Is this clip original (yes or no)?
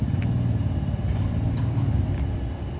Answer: yes